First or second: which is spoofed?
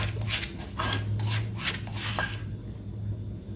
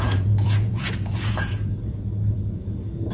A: second